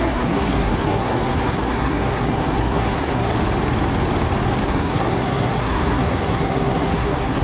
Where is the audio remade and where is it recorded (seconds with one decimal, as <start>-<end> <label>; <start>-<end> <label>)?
0.0-3.3 remade; 3.3-4.6 recorded; 4.6-7.4 remade